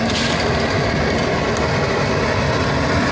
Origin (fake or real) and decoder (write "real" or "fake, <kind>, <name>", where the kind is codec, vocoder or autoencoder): real